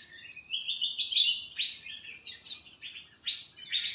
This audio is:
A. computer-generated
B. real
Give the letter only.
B